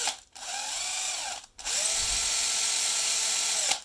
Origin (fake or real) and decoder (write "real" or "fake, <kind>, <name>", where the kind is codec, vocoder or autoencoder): real